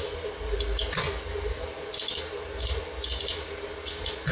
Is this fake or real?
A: real